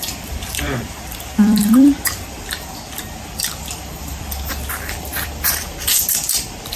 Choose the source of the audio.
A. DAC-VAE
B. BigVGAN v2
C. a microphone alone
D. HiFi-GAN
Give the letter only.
B